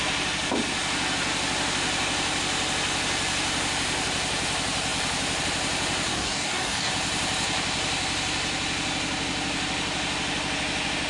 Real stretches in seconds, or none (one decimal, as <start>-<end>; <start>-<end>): 0.0-6.1; 6.9-11.1